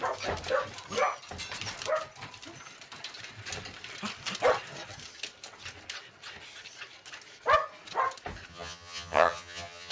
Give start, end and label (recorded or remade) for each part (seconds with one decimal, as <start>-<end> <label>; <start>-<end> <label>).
0.0-8.5 recorded; 8.5-9.9 remade